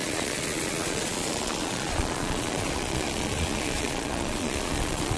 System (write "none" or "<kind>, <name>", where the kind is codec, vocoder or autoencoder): vocoder, Vocos